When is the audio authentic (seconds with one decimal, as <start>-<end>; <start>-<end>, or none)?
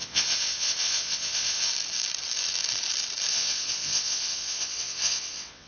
1.7-3.3